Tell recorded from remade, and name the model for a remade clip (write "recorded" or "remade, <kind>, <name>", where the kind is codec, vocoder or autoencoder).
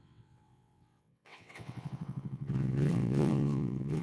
remade, vocoder, WaveNeXt